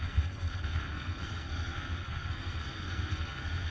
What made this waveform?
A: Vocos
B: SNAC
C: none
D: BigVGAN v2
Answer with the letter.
B